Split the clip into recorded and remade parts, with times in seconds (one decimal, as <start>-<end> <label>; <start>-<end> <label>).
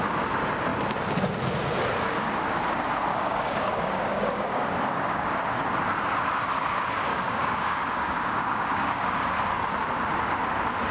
0.0-3.1 recorded; 3.1-5.4 remade; 5.4-7.1 recorded; 7.1-9.2 remade; 9.2-10.9 recorded